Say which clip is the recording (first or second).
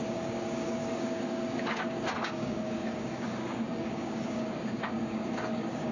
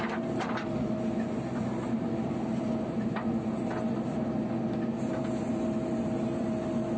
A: second